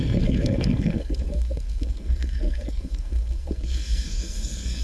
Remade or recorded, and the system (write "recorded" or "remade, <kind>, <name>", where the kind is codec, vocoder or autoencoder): remade, codec, SNAC